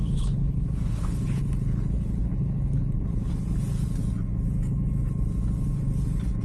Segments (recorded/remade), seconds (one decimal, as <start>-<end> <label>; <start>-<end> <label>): 0.0-3.3 remade; 3.3-6.4 recorded